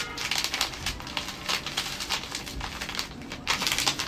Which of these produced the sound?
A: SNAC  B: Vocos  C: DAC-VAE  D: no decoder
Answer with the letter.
D